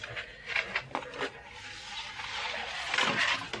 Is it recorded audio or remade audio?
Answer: recorded